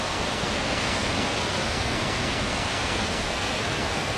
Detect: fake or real fake